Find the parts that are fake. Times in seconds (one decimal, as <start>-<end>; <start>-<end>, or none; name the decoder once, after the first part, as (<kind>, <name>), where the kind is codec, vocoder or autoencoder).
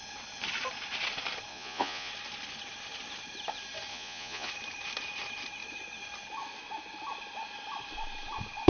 1.5-2.1 (vocoder, Vocos); 3.9-4.5